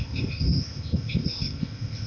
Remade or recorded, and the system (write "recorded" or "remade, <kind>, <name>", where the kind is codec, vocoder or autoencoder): remade, codec, ZipCodec